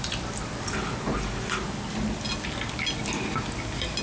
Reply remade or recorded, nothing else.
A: recorded